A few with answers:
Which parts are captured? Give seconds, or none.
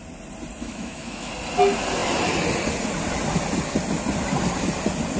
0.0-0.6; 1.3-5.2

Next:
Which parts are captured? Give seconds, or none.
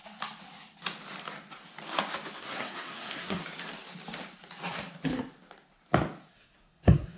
0.0-2.4; 3.4-6.3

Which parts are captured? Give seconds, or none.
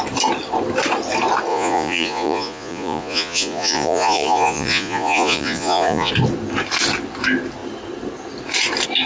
0.0-1.5; 6.1-9.1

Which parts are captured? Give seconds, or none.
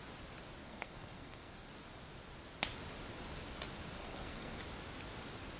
0.0-0.6; 1.7-4.0; 4.6-5.6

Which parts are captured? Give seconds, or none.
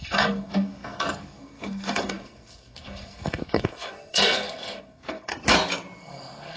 5.3-6.0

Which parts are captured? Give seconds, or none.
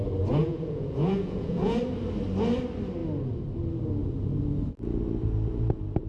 0.0-0.4; 1.8-6.1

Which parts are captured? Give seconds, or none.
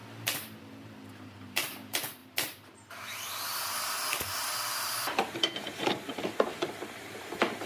0.0-1.1; 2.2-4.8